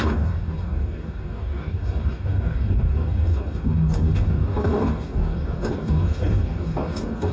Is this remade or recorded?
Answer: remade